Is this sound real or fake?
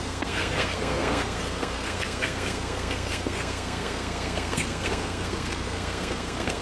fake